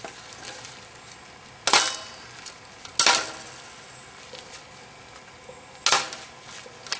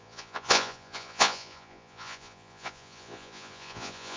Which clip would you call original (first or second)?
first